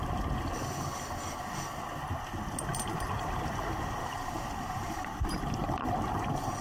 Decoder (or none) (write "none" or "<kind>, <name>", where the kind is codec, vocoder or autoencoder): none